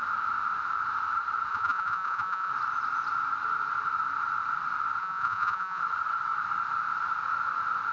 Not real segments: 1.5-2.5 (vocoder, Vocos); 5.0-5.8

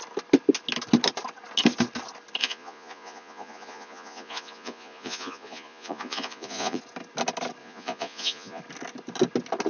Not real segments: 2.4-6.8 (vocoder, Vocos); 7.6-8.6

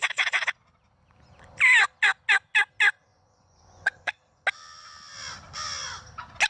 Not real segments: 3.1-4.1 (vocoder, Vocos)

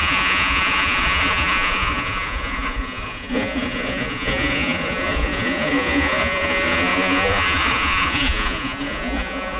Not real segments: 0.0-9.6 (vocoder, Vocos)

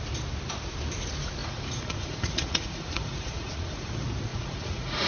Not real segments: 1.4-3.9 (vocoder, Vocos); 4.3-5.1

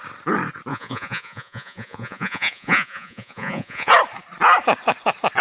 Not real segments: 0.7-3.9 (vocoder, Vocos)